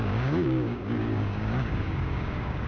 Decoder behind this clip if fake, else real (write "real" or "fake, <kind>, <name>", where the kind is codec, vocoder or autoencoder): fake, codec, DAC